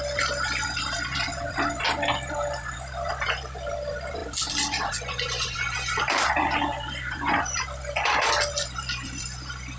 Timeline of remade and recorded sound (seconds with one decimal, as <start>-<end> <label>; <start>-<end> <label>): 0.0-9.8 recorded